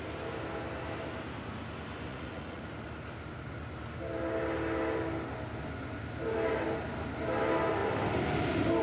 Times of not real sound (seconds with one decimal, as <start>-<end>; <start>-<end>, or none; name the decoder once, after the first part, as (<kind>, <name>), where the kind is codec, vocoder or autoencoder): 2.1-2.6 (vocoder, Vocos)